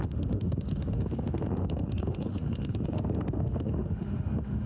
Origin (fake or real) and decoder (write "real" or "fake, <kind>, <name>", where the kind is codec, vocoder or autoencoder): fake, autoencoder, DAC-VAE